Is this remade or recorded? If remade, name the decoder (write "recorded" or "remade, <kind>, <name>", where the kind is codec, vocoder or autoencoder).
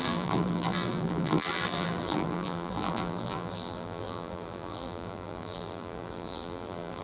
remade, vocoder, BigVGAN v2